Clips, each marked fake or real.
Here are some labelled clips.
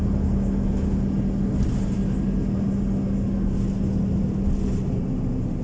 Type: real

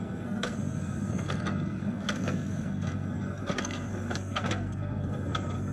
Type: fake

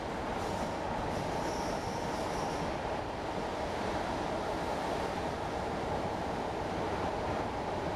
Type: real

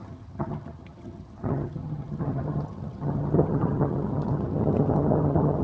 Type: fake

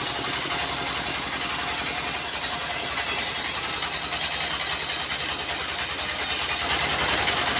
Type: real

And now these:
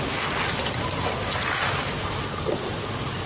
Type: real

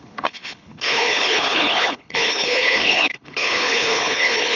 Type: fake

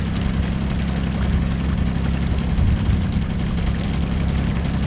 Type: real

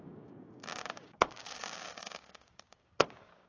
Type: fake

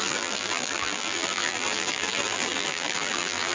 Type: fake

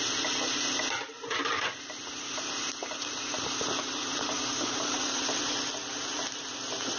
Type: real